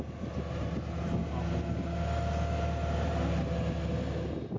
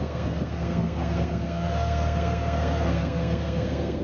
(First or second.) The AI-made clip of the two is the second